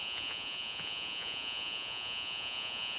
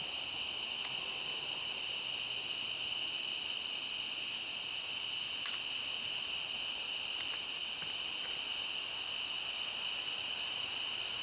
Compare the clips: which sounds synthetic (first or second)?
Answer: first